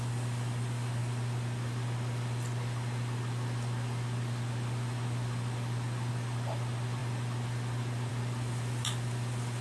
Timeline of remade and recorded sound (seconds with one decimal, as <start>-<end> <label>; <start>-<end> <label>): 0.0-9.6 recorded